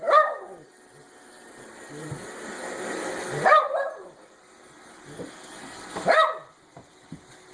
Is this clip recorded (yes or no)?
yes